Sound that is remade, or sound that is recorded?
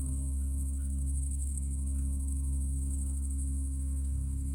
remade